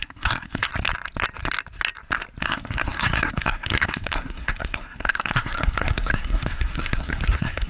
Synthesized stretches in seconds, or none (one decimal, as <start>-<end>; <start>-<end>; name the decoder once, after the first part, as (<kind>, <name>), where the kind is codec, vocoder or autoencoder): 0.0-0.7 (codec, SNAC); 2.4-7.7

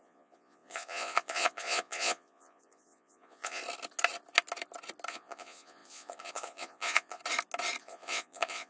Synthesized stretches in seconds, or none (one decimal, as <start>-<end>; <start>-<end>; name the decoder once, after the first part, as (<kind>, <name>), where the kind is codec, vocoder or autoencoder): 0.0-3.6 (vocoder, Vocos); 5.1-7.2; 7.8-8.7

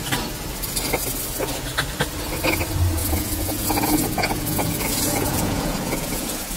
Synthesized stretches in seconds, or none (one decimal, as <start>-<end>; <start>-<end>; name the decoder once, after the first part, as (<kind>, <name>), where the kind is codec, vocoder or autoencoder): 3.0-6.6 (vocoder, Vocos)

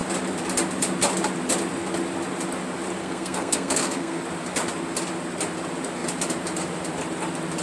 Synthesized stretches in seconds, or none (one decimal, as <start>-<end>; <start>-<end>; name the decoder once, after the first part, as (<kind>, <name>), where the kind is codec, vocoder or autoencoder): 3.0-4.2 (codec, SNAC)

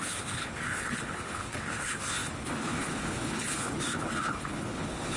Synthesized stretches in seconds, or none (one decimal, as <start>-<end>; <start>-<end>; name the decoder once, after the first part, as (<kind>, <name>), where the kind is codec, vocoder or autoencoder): 0.0-5.2 (codec, HILCodec)

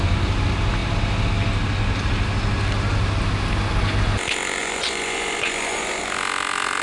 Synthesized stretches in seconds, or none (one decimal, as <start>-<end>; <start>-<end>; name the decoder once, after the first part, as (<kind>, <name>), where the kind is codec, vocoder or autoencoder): 4.6-6.0 (vocoder, Vocos)

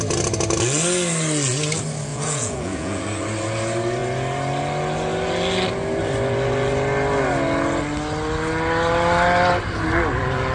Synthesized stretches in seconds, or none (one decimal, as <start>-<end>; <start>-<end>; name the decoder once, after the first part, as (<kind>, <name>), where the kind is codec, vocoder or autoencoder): 2.1-3.0 (vocoder, Vocos)

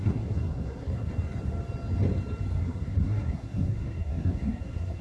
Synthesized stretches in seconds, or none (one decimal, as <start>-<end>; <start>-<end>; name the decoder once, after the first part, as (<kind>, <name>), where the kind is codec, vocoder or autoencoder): 0.0-1.1 (codec, SNAC); 2.6-5.0